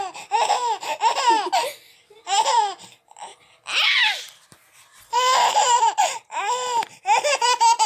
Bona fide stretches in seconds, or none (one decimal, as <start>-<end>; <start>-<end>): 0.0-2.0; 2.5-3.3; 7.0-7.9